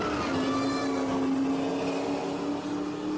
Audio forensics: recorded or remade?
recorded